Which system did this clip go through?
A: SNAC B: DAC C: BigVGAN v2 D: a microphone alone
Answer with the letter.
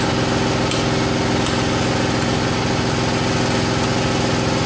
D